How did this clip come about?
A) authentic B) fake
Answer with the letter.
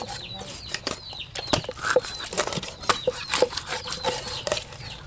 A